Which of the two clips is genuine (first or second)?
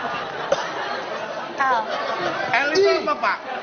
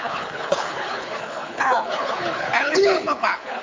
first